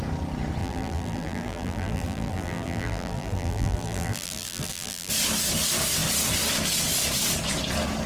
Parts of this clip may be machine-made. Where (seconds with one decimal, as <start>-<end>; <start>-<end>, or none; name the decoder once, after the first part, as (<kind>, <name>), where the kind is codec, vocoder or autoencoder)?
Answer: 0.6-5.1 (vocoder, BigVGAN v2)